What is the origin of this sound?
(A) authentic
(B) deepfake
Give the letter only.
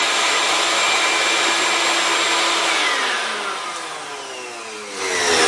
A